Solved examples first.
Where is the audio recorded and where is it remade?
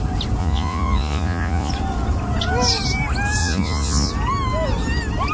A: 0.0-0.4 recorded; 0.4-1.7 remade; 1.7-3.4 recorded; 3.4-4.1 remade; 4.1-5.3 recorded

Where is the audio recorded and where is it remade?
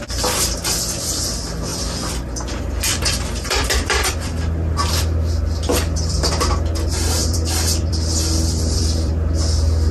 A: 0.0-1.7 recorded; 1.7-6.3 remade; 6.3-7.2 recorded; 7.2-9.1 remade; 9.1-9.9 recorded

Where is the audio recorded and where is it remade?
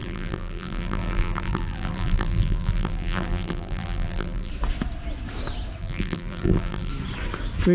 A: 0.0-4.5 remade; 4.5-5.8 recorded; 5.8-6.9 remade; 6.9-7.7 recorded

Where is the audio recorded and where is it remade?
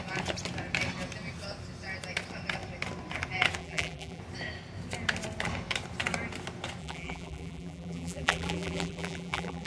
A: 0.0-3.6 recorded; 3.6-4.2 remade; 4.2-6.8 recorded; 6.8-9.7 remade